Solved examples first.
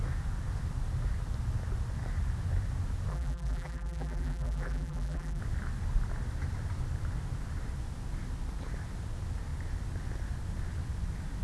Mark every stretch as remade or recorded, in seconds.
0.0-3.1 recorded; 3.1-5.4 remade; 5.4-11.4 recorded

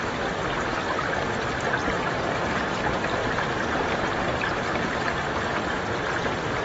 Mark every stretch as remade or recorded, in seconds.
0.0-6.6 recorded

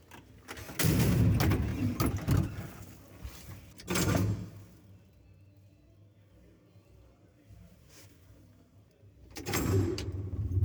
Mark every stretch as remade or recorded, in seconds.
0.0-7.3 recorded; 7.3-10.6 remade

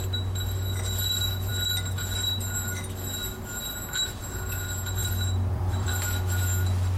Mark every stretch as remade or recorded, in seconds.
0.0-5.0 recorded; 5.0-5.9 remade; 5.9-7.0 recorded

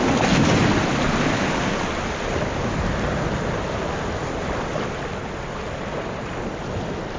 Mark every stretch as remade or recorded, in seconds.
0.0-7.2 recorded

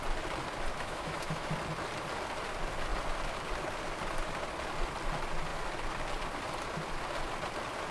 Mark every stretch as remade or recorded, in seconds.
0.0-0.7 recorded; 0.7-1.5 remade; 1.5-7.9 recorded

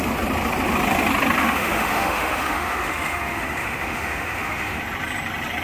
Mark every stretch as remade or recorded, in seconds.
0.0-1.4 recorded; 1.4-4.8 remade; 4.8-5.6 recorded